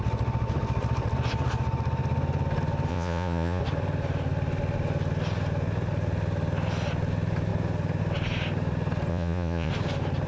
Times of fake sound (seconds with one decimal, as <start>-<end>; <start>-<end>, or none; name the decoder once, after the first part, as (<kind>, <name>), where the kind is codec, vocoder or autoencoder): 2.9-3.6 (vocoder, Vocos); 9.1-9.7